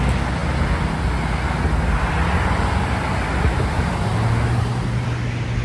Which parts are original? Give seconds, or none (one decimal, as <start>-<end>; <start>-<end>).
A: 0.0-5.6